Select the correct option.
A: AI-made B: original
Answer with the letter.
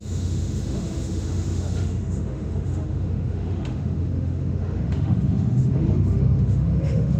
A